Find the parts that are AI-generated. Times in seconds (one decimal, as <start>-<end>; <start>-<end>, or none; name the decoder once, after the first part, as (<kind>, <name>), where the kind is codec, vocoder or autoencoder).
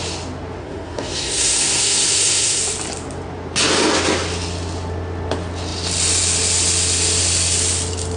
0.6-2.6 (codec, SNAC)